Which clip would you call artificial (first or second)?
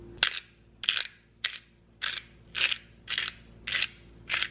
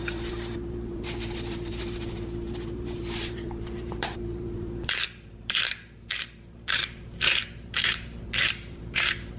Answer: second